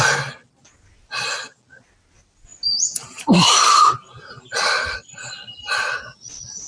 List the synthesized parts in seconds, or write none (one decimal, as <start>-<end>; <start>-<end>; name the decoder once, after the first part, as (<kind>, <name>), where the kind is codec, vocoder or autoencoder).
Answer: none